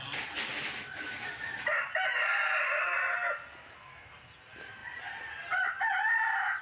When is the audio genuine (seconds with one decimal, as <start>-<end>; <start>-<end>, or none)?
0.0-6.6